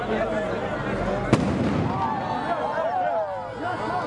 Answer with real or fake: real